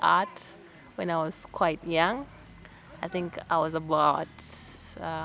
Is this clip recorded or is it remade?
recorded